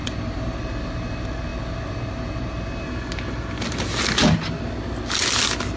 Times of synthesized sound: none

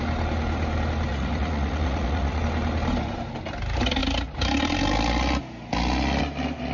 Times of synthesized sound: 1.1-2.4

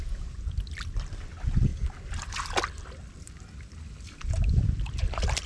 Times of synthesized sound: none

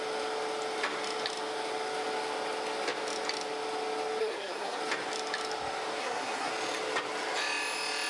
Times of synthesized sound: 4.2-4.8; 6.0-6.5

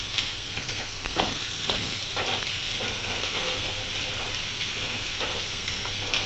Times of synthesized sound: 0.0-2.0; 2.5-3.8; 4.5-6.3